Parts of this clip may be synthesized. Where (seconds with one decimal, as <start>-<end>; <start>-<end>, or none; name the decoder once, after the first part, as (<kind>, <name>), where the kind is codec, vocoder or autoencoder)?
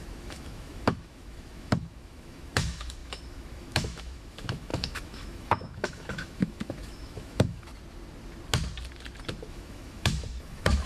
0.0-7.7 (autoencoder, DAC-VAE); 9.5-10.9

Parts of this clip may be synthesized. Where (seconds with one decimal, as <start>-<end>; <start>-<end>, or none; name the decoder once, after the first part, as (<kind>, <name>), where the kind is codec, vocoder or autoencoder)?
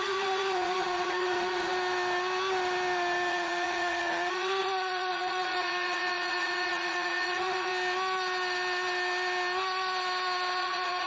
0.0-1.7 (vocoder, Vocos); 3.3-7.7; 10.6-11.1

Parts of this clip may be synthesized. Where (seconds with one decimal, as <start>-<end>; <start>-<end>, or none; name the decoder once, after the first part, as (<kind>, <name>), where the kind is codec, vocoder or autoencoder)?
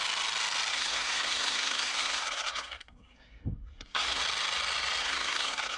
0.7-4.2 (codec, SNAC); 5.0-5.8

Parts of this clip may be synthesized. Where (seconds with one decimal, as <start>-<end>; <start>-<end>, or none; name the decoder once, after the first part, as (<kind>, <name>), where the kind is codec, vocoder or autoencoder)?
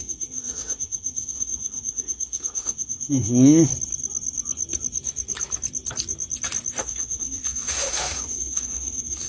0.0-3.7 (autoencoder, DAC-VAE); 6.8-9.3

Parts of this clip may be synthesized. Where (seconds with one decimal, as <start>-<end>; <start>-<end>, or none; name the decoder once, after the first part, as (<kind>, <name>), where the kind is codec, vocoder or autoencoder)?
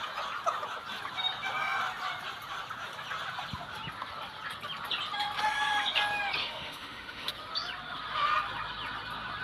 6.4-7.3 (autoencoder, DAC-VAE)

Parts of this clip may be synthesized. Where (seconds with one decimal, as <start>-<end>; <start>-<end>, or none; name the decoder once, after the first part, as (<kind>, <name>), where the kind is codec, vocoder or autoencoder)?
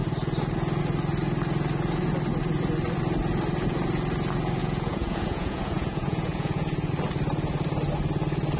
4.6-6.9 (vocoder, Vocos)